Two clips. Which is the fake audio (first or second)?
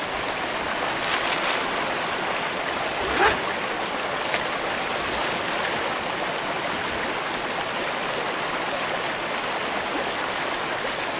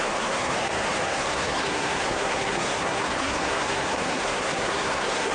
second